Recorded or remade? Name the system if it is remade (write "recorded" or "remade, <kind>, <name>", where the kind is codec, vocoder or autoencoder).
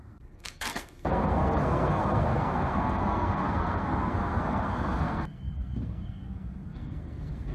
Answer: remade, codec, SNAC